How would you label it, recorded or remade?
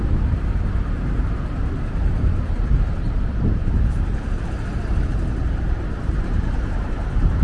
remade